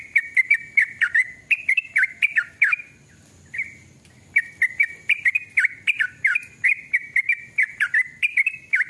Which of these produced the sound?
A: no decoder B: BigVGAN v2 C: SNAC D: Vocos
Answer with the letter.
B